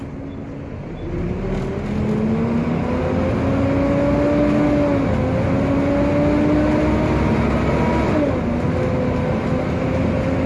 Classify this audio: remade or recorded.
recorded